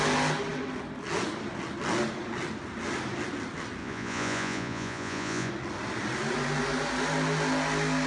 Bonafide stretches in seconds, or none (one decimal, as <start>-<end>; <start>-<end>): 0.0-3.8; 5.5-8.1